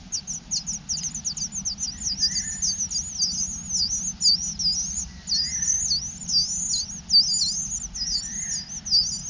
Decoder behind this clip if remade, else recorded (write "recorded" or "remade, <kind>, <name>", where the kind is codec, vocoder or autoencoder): recorded